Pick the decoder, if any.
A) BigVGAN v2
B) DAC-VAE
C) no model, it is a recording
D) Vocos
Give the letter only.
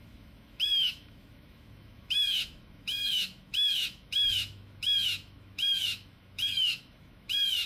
B